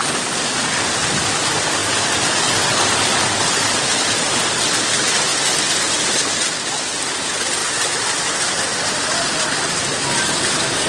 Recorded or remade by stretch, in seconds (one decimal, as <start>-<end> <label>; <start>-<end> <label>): 0.0-10.9 recorded